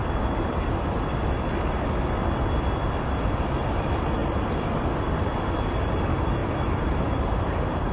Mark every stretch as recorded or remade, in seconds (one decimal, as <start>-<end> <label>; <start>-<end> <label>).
0.0-6.4 recorded; 6.4-7.9 remade